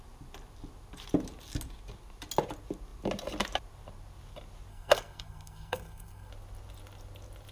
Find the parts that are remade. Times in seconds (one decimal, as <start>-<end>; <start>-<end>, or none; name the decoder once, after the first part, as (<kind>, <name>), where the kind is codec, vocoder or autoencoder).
4.7-6.3 (codec, SNAC)